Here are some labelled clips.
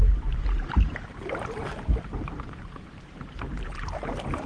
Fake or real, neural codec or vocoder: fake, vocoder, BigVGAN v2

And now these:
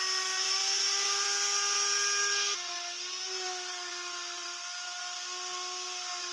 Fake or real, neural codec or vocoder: real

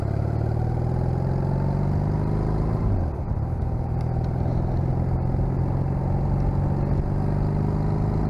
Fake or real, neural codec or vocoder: real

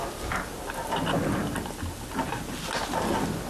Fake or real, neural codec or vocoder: real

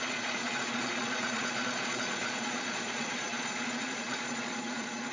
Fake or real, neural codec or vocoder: fake, vocoder, Vocos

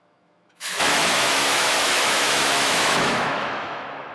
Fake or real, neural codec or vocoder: fake, autoencoder, DAC-VAE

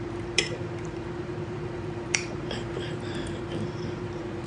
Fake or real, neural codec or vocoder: fake, vocoder, BigVGAN v2